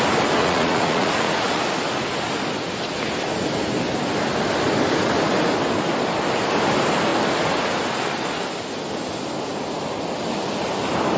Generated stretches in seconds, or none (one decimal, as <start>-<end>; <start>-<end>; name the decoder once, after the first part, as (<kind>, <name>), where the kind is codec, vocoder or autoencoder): 0.4-1.6 (vocoder, Vocos)